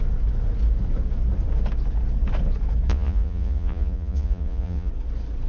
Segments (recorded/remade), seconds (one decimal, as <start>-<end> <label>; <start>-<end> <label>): 0.0-2.9 recorded; 2.9-4.9 remade; 4.9-5.5 recorded